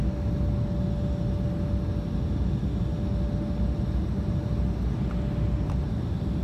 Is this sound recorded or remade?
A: recorded